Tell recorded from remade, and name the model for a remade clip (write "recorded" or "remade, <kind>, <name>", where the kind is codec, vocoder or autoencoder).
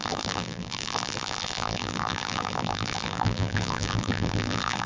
remade, vocoder, BigVGAN v2